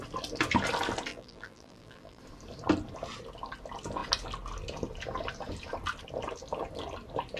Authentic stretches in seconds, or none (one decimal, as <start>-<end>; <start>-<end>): 0.0-1.1; 2.2-7.4